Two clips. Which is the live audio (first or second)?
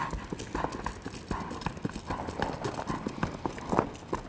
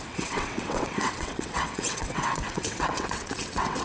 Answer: first